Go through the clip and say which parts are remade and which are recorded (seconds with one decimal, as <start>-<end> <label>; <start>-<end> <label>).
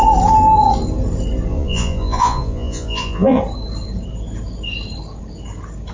0.0-1.5 recorded; 1.5-3.4 remade; 3.4-5.9 recorded